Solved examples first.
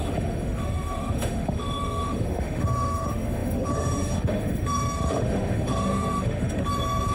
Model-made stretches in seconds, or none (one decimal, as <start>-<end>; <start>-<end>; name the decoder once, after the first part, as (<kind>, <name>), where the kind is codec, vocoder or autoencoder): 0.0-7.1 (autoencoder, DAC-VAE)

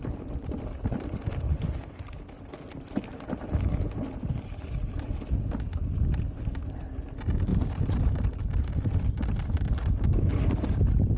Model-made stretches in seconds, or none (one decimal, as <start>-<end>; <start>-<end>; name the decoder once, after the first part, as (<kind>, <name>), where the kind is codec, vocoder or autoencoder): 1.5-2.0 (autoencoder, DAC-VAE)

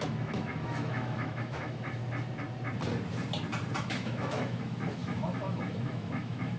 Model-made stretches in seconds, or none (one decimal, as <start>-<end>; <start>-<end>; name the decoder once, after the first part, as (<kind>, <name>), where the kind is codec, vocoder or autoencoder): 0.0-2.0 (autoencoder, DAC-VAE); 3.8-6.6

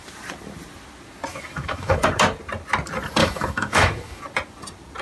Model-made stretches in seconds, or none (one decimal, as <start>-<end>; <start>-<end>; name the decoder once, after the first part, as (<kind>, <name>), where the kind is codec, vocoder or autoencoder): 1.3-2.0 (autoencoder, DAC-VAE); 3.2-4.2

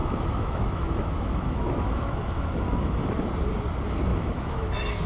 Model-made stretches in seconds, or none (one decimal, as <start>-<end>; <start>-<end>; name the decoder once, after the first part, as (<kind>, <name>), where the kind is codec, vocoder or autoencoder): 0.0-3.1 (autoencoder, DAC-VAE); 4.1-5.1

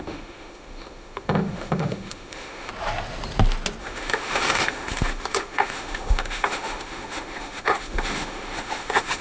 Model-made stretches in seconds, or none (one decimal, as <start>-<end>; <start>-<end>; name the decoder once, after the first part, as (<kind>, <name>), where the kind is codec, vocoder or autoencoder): 0.0-2.7 (autoencoder, DAC-VAE); 3.8-9.2